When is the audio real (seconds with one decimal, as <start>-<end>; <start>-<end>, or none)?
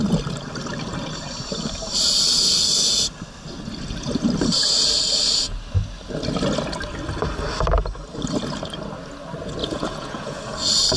0.0-9.6; 10.4-11.0